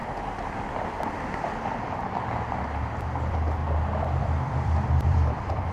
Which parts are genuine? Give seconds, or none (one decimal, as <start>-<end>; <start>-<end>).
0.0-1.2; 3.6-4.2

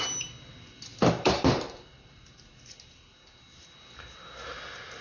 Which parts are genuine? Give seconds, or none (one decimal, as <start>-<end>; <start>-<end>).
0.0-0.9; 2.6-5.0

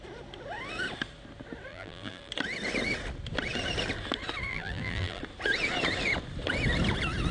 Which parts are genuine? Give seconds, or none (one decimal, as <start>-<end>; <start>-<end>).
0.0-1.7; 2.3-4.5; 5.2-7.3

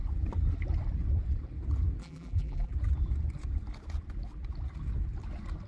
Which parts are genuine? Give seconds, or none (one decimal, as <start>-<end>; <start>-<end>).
0.0-2.0; 2.7-5.7

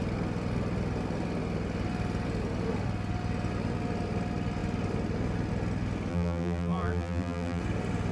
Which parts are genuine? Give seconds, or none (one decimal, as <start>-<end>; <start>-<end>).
0.0-6.1; 7.6-8.1

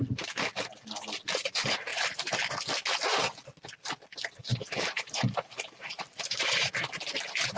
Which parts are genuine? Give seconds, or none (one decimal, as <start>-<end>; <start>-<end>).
0.0-1.9; 2.5-4.5; 6.7-7.6

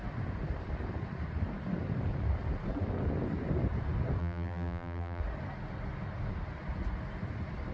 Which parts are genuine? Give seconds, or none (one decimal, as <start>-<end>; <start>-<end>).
0.0-4.2; 5.2-7.7